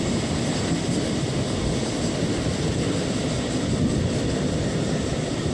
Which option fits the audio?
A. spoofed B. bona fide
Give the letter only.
B